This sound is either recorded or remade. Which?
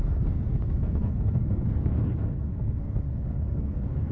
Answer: remade